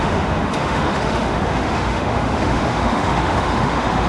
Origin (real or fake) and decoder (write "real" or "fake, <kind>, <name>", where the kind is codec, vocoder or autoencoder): fake, autoencoder, DAC-VAE